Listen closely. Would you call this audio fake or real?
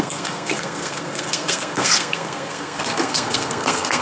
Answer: fake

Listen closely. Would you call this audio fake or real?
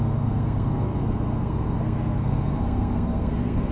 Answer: fake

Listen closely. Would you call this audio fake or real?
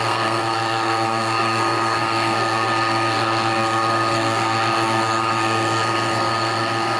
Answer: fake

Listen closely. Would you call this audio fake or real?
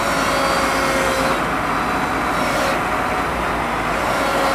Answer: real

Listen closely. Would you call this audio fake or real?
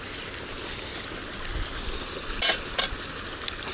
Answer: real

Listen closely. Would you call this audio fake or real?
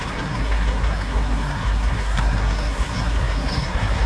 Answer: fake